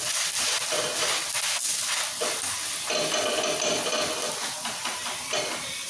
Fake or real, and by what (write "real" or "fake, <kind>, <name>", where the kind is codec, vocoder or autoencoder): real